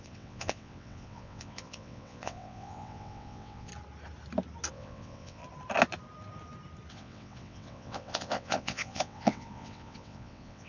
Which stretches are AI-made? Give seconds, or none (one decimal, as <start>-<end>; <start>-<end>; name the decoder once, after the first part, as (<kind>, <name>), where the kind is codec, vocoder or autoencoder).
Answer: 0.0-3.7 (vocoder, WaveNeXt); 4.7-5.4; 6.9-10.7